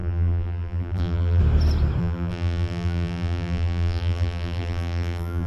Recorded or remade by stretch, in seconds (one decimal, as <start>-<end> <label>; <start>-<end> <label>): 0.0-1.4 remade; 1.4-2.0 recorded; 2.0-5.5 remade